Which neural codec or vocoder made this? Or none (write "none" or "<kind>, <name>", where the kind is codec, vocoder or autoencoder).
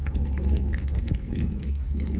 codec, SNAC